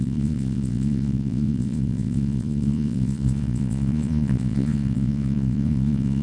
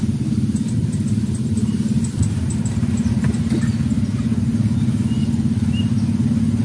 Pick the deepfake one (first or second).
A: first